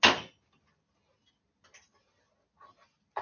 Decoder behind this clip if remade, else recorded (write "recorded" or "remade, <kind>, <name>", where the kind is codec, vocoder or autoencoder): recorded